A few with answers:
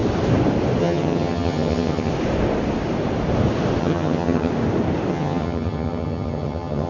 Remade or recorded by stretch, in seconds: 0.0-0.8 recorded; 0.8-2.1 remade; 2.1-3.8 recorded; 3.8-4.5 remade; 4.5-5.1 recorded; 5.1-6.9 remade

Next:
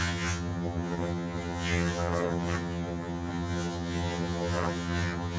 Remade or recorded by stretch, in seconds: 0.0-5.4 remade

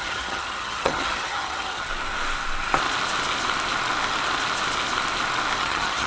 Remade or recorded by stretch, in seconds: 0.0-1.9 remade; 1.9-5.6 recorded; 5.6-6.1 remade

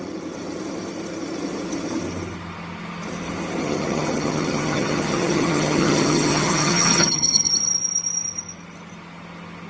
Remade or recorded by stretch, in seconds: 0.0-3.6 recorded; 3.6-7.5 remade; 7.5-9.7 recorded

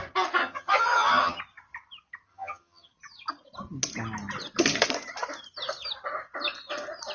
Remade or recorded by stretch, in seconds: 0.0-0.4 recorded; 0.4-1.4 remade; 1.4-2.3 recorded; 2.3-2.9 remade; 2.9-7.1 recorded

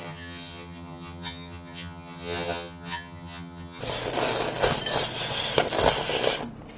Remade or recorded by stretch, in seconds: 0.0-3.8 remade; 3.8-6.8 recorded